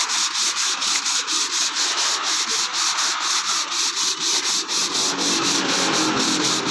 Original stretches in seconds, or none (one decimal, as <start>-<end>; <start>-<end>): 0.0-6.7